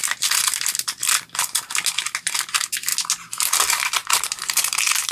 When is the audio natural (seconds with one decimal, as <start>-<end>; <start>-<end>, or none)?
0.0-1.0; 1.7-4.0